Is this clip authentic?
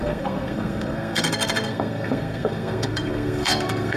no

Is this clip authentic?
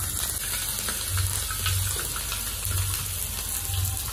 yes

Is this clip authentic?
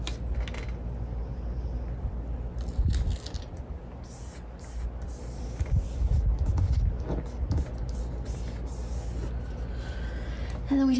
yes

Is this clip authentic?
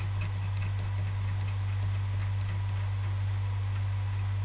yes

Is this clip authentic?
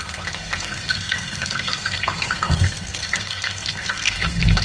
no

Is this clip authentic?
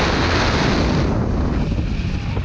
yes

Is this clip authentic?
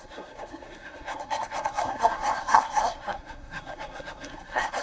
no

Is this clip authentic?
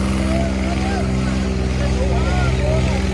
yes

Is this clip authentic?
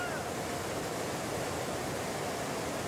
yes